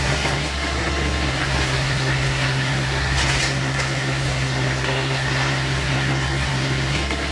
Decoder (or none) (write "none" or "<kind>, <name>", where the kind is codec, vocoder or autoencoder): codec, SNAC